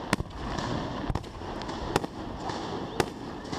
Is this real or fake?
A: real